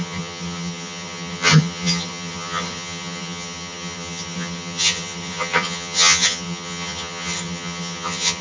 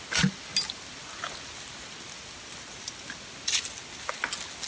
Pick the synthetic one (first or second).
first